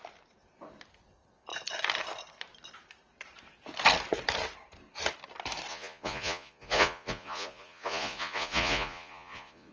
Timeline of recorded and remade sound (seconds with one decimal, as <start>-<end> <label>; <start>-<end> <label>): 0.0-5.7 recorded; 5.7-9.7 remade